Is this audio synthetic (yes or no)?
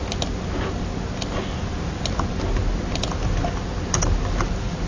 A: no